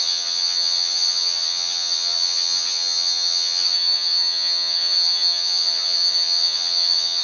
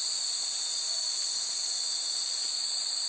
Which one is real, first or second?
second